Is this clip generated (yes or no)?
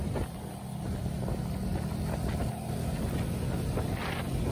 no